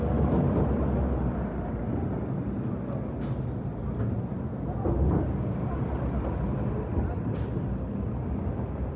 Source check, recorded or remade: recorded